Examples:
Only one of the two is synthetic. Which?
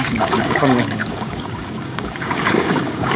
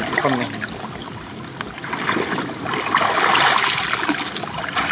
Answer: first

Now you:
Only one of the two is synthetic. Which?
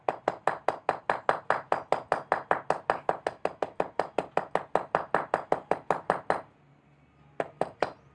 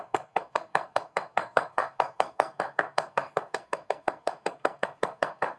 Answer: second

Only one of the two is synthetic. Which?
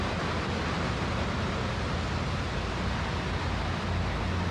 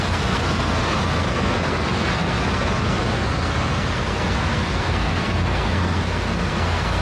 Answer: second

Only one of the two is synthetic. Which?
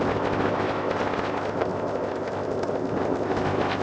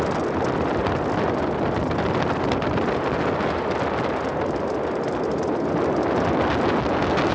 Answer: first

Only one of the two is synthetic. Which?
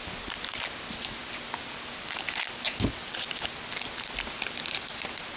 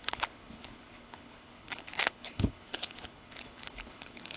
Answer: second